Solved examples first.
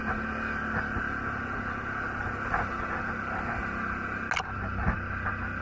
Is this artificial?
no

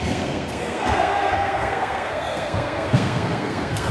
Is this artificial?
yes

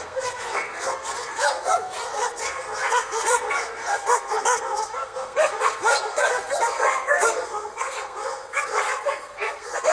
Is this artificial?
yes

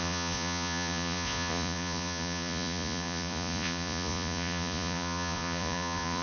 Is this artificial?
yes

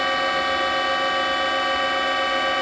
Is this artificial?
no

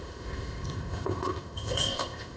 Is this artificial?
yes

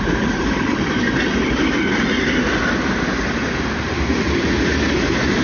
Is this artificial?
no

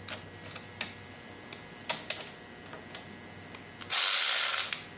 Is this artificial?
no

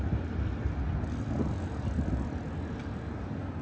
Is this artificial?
no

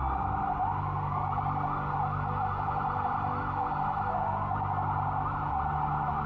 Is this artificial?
no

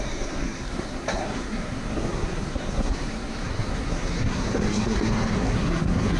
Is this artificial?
yes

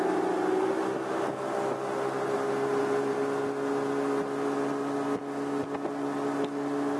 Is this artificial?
no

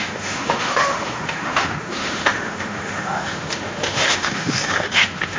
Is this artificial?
yes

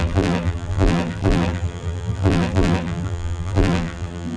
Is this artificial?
yes